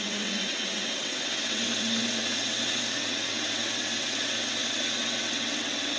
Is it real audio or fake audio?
fake